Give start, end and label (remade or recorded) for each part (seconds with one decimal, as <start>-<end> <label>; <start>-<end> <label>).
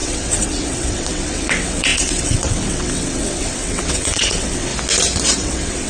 0.0-4.7 remade; 4.7-5.4 recorded; 5.4-5.9 remade